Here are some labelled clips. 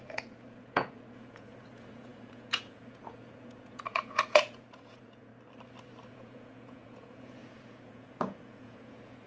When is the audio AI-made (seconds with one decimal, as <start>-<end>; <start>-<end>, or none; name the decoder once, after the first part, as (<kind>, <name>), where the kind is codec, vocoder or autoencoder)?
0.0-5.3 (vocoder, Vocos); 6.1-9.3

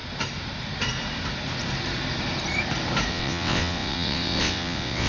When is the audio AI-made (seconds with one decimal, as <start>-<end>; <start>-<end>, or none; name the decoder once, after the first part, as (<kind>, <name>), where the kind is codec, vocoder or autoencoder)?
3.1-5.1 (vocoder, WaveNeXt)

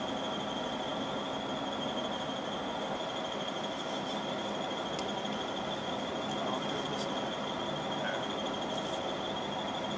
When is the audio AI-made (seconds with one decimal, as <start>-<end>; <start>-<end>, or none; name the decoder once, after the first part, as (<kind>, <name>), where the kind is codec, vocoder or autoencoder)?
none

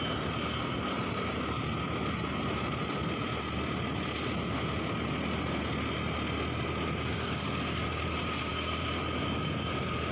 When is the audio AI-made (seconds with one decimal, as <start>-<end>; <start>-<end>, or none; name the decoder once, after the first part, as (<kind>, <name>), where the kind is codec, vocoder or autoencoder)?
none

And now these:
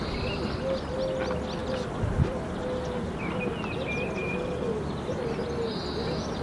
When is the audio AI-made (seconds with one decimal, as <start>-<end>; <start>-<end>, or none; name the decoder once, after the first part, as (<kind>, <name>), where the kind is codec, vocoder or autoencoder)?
1.6-2.9 (vocoder, BigVGAN v2); 4.2-5.2